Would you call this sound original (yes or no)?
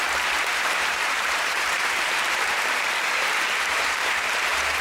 no